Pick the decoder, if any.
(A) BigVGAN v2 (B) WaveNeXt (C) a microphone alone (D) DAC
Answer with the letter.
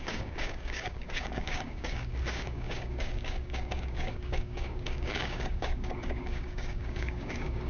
D